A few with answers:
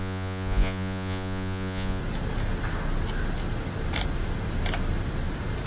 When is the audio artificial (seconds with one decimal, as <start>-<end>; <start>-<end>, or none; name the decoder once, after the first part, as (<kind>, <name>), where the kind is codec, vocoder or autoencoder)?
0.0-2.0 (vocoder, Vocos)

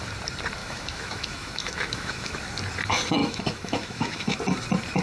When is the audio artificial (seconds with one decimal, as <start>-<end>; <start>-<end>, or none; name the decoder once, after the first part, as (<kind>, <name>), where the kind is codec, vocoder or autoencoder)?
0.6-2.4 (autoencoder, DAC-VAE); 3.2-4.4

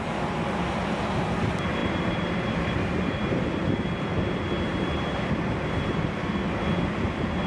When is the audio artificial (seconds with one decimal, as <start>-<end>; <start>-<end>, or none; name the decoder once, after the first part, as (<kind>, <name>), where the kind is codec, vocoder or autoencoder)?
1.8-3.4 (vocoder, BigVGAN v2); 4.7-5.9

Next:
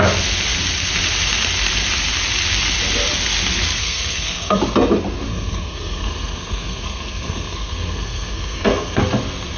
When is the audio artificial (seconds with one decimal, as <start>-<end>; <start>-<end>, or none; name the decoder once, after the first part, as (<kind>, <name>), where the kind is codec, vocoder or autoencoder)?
3.8-4.6 (codec, SNAC); 5.3-9.0